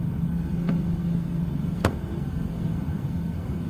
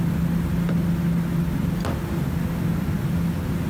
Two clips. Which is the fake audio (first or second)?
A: first